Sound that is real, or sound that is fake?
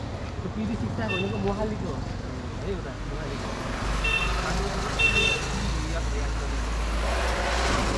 real